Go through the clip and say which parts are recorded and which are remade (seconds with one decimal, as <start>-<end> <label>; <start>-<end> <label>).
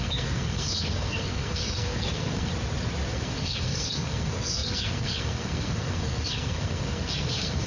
0.0-2.5 remade; 2.5-3.1 recorded; 3.1-7.7 remade